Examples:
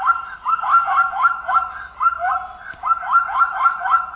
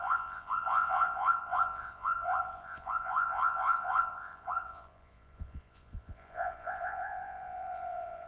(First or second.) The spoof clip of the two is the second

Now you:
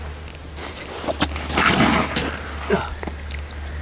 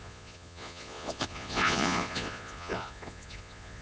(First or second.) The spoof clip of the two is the second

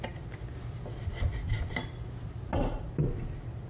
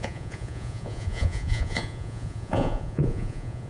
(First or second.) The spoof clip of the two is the second